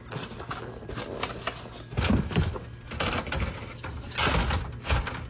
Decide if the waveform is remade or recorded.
recorded